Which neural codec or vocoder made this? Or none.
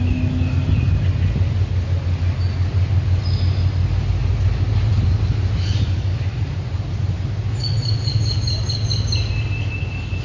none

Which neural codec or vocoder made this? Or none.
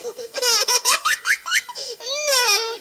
codec, SNAC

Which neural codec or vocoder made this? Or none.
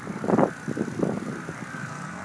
none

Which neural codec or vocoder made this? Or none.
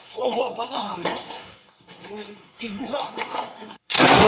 codec, SNAC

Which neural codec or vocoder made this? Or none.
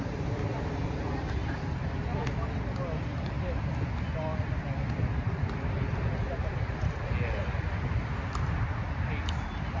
none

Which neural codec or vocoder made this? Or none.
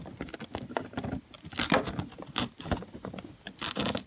none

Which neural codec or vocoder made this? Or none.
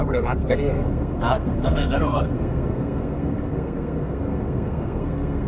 codec, SNAC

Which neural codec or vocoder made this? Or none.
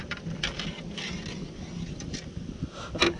none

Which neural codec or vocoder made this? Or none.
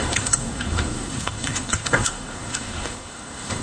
codec, SNAC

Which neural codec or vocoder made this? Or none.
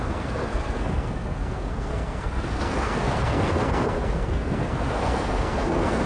codec, SNAC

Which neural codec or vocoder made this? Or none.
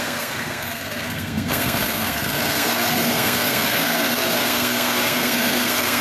codec, SNAC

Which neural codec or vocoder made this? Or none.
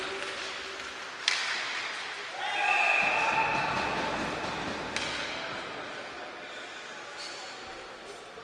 none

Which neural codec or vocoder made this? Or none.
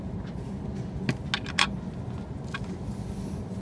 none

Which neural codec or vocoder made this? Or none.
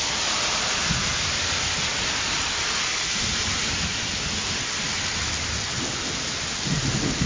none